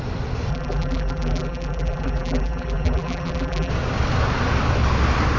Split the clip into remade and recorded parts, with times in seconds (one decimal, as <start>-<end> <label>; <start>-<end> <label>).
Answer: 0.0-0.5 recorded; 0.5-3.7 remade; 3.7-5.4 recorded